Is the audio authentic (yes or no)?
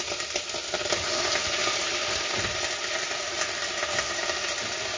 yes